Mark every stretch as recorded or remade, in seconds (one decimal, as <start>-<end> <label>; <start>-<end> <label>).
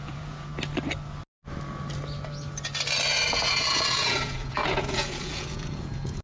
0.0-0.5 remade; 0.5-3.3 recorded; 3.3-6.2 remade